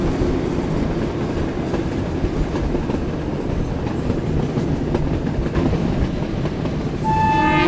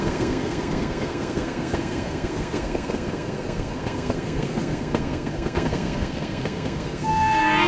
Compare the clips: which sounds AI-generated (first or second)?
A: second